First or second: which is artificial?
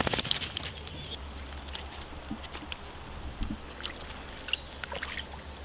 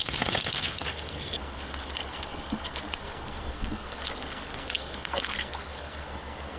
second